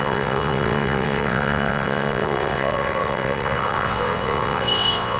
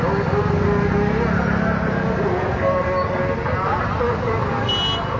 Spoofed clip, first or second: first